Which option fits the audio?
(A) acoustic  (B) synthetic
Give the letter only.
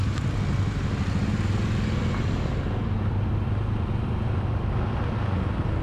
A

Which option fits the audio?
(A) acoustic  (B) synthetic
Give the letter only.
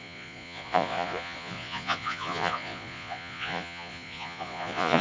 B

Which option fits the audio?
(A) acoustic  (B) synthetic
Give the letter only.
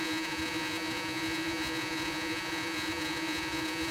B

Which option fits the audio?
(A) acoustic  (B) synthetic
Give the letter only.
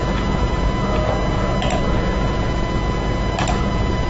A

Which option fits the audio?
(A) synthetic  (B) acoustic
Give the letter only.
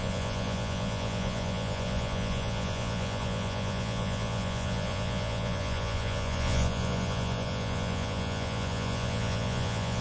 A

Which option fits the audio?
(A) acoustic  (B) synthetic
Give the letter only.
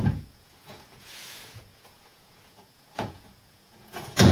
B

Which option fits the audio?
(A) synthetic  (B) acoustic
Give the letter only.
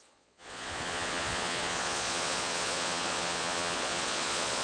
A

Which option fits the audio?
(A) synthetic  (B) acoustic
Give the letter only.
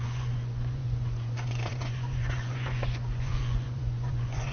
A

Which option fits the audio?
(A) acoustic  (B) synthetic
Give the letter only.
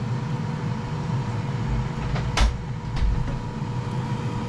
A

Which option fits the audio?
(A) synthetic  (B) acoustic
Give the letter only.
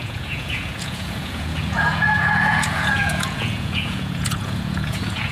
A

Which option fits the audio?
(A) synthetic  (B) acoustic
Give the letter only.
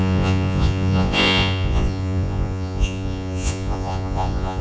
A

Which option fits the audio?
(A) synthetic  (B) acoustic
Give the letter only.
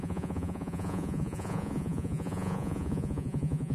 A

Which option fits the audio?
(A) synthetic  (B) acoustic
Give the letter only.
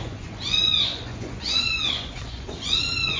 A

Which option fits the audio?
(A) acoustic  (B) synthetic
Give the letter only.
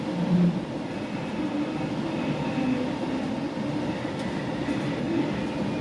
A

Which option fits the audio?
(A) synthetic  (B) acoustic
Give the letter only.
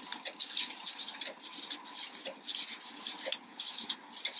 B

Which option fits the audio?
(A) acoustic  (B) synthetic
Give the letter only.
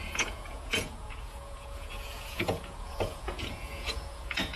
B